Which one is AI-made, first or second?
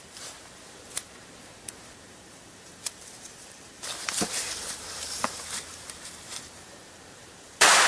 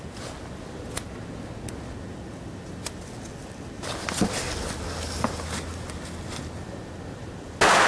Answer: first